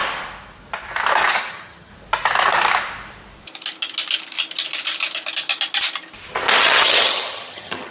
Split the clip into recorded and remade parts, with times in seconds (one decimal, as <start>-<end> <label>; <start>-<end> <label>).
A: 0.0-1.3 recorded; 1.3-1.9 remade; 1.9-6.6 recorded; 6.6-7.9 remade